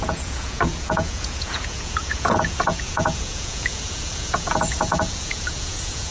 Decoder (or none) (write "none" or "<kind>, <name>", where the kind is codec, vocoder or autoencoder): vocoder, Vocos